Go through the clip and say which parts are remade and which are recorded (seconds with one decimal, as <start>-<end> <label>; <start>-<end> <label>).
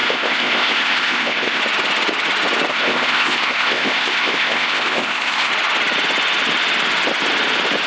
0.0-1.6 remade; 1.6-2.7 recorded; 2.7-5.5 remade; 5.5-7.9 recorded